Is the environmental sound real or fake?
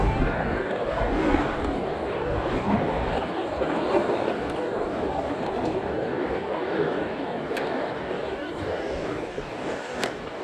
fake